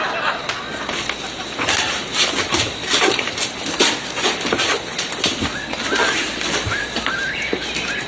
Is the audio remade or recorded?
recorded